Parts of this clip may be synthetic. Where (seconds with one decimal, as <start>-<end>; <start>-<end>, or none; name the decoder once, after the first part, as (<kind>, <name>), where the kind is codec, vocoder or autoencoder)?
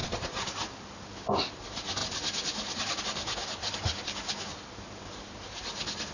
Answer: 0.0-0.5 (vocoder, Vocos)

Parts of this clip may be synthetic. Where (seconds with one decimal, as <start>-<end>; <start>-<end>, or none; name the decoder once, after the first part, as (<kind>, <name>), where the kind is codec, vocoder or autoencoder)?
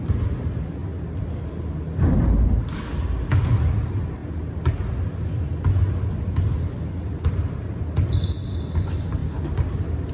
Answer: none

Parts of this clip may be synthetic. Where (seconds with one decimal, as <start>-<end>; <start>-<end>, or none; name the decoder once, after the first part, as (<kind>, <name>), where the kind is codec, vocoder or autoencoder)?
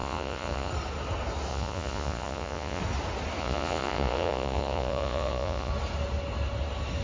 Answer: 0.0-0.7 (vocoder, Vocos); 1.5-2.8; 3.4-5.7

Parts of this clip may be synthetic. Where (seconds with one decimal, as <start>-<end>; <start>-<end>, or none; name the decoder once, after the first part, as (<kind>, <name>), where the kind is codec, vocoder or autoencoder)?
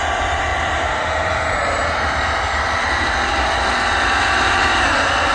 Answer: 0.0-5.3 (vocoder, BigVGAN v2)